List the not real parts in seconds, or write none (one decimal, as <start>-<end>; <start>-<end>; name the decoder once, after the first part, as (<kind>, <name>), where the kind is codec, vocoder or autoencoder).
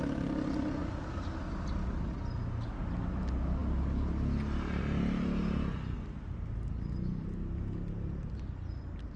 none